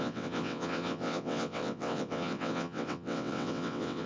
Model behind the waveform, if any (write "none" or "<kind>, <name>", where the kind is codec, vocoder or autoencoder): vocoder, WaveNeXt